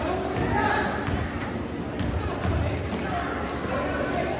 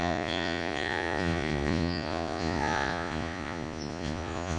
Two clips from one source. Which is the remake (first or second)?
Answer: second